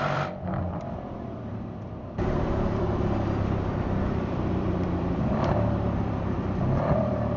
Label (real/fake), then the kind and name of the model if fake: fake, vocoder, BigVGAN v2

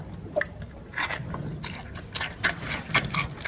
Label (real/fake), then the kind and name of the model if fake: real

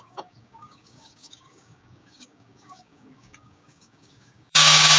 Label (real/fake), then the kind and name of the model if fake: fake, codec, DAC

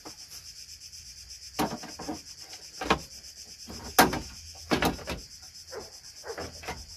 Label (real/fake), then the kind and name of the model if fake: real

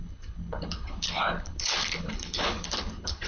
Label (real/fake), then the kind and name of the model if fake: fake, codec, HILCodec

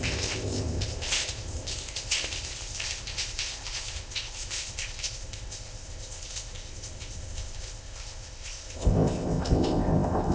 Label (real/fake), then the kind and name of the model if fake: fake, codec, ZipCodec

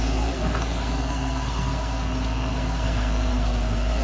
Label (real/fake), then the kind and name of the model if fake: fake, codec, SNAC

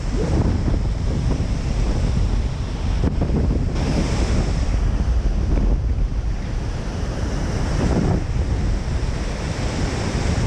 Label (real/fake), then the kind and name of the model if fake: fake, vocoder, BigVGAN v2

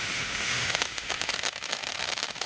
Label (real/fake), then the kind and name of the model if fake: fake, autoencoder, DAC-VAE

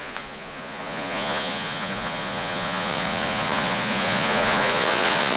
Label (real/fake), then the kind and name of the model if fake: fake, vocoder, Vocos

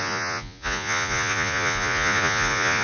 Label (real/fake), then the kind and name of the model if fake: fake, vocoder, Vocos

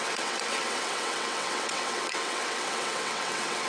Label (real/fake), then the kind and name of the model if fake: fake, vocoder, WaveNeXt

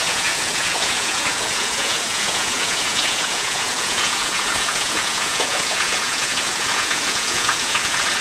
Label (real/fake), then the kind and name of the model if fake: fake, vocoder, Vocos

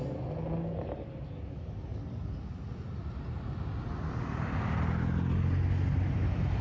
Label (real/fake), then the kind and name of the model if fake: real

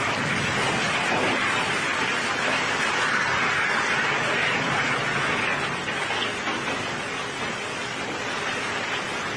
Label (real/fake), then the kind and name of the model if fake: real